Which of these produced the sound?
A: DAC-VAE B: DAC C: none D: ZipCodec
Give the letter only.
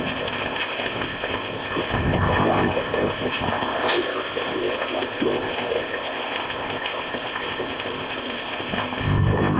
D